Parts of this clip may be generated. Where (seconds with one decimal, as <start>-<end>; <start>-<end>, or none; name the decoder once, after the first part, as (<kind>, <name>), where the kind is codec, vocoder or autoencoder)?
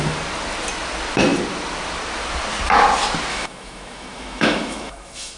3.3-5.4 (autoencoder, DAC-VAE)